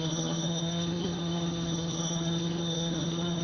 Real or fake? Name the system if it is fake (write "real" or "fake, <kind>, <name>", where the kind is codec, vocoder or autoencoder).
fake, codec, SNAC